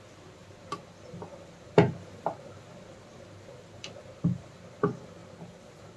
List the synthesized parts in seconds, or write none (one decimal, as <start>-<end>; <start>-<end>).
none